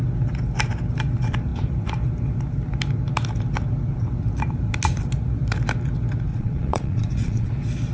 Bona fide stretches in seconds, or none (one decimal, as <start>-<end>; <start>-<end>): 0.0-6.3; 7.5-7.9